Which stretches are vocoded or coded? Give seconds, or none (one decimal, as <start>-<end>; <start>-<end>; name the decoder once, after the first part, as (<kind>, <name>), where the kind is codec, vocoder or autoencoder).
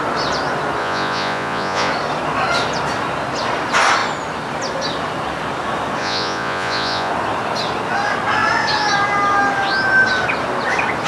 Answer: 0.8-1.9 (vocoder, Vocos); 6.0-7.1